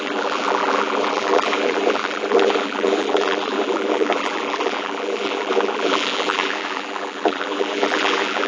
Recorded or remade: remade